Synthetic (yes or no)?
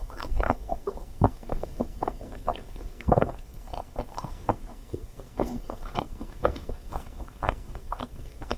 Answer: yes